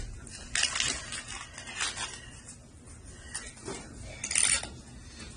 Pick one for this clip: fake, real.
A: real